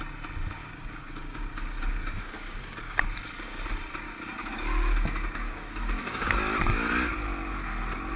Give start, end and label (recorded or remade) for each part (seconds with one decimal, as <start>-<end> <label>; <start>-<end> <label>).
0.0-0.6 recorded; 0.6-3.0 remade; 3.0-4.4 recorded; 4.4-6.3 remade; 6.3-8.2 recorded